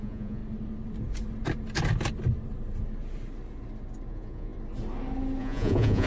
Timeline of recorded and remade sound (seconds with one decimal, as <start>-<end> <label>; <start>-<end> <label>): 0.0-0.4 remade; 0.4-4.1 recorded; 4.1-4.5 remade; 4.5-5.4 recorded; 5.4-6.1 remade